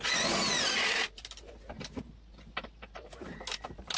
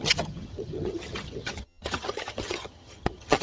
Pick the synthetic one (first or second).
second